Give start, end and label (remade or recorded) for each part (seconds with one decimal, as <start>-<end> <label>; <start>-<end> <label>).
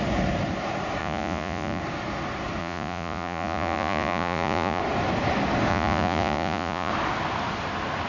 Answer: 0.0-1.0 recorded; 1.0-1.8 remade; 1.8-2.6 recorded; 2.6-4.8 remade; 4.8-5.7 recorded; 5.7-6.9 remade; 6.9-8.1 recorded